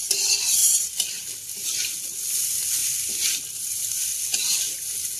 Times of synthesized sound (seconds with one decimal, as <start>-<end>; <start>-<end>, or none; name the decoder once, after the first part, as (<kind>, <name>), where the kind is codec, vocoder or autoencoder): 2.8-3.9 (vocoder, BigVGAN v2); 4.3-4.8